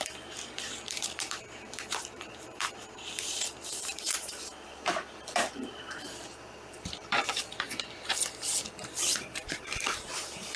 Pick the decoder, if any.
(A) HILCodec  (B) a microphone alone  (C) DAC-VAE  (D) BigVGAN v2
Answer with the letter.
D